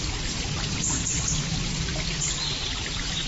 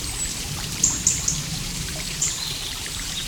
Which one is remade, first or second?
second